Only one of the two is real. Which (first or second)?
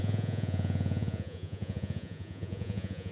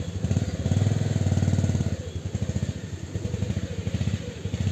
second